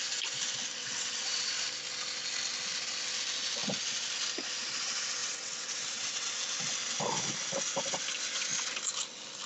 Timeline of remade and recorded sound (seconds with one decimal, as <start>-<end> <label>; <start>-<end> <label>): 0.0-0.8 recorded; 0.8-1.5 remade; 1.5-5.2 recorded; 5.2-6.3 remade; 6.3-9.5 recorded